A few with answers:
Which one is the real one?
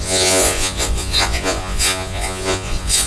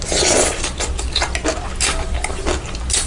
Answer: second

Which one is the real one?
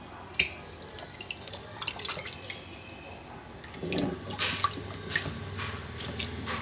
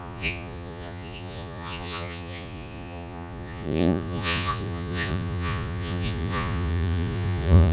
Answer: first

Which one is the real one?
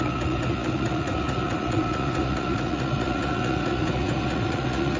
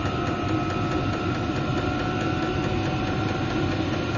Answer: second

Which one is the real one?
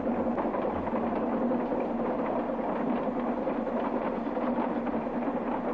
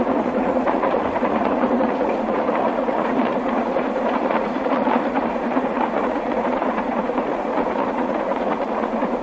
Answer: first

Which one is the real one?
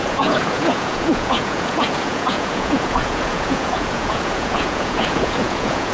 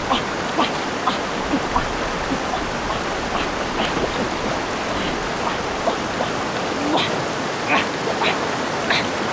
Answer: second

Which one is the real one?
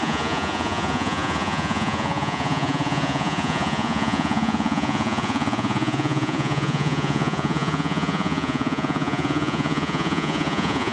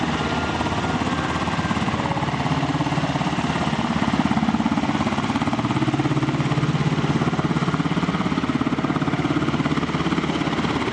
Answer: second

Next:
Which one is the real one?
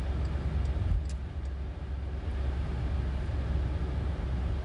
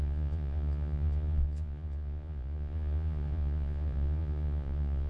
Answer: first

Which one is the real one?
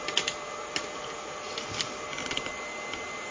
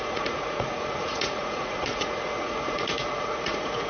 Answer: first